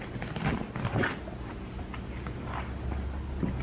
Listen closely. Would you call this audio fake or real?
real